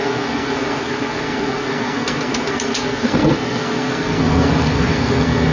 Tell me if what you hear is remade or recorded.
remade